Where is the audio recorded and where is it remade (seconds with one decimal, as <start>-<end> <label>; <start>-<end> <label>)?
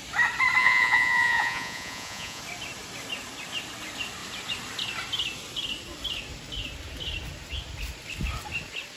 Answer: 0.0-0.6 recorded; 0.6-2.4 remade; 2.4-9.0 recorded